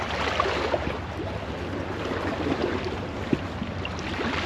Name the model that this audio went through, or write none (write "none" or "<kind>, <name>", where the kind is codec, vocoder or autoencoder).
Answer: none